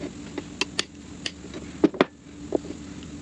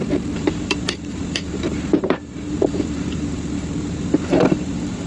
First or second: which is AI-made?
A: second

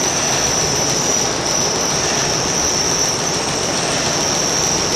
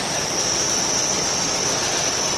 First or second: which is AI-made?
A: first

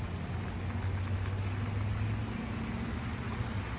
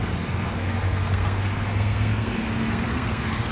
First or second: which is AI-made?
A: second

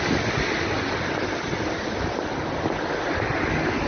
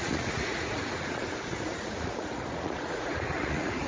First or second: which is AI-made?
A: second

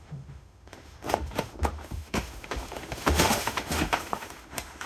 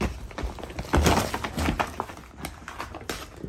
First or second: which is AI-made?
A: first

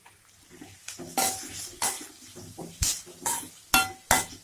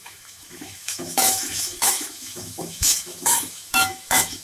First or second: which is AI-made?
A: second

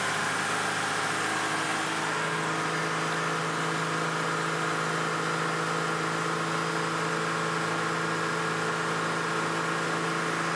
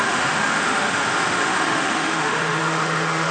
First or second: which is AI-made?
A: second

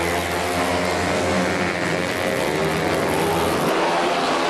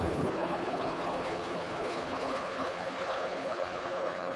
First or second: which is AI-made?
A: second